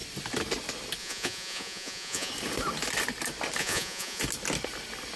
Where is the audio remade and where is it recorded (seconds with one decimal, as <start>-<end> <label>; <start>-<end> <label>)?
0.0-1.0 recorded; 1.0-2.3 remade; 2.3-3.6 recorded; 3.6-4.2 remade; 4.2-5.2 recorded